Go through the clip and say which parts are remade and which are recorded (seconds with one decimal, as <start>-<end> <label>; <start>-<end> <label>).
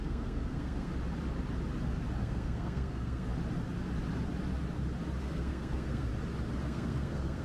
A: 0.0-0.9 remade; 0.9-2.2 recorded; 2.2-3.3 remade; 3.3-5.2 recorded; 5.2-6.1 remade; 6.1-6.6 recorded; 6.6-7.4 remade